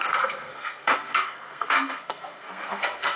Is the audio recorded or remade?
remade